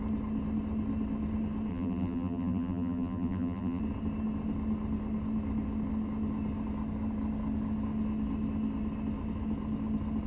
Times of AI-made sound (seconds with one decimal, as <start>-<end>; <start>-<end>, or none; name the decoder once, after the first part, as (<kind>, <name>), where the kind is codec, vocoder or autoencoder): 1.7-3.8 (vocoder, BigVGAN v2)